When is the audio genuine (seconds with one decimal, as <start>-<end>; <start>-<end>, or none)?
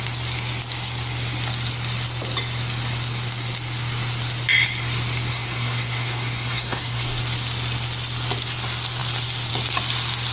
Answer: 0.0-5.3; 7.2-10.3